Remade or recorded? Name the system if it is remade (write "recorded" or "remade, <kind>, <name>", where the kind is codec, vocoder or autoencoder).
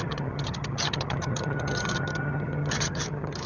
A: remade, vocoder, HiFi-GAN